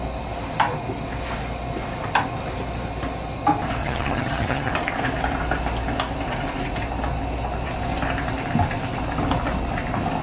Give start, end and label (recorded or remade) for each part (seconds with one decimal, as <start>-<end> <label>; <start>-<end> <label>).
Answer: 0.0-3.8 recorded; 3.8-4.7 remade; 4.7-10.2 recorded